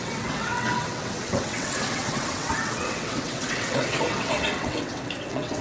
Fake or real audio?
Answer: fake